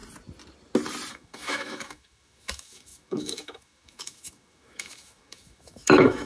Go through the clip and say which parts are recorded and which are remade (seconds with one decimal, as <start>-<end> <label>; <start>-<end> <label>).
0.0-1.1 recorded; 1.1-6.3 remade